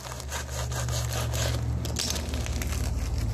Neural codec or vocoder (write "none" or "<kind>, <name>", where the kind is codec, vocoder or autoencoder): none